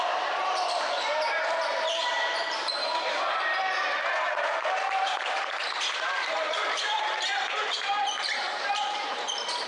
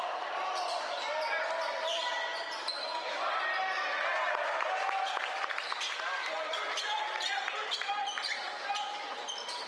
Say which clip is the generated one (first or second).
first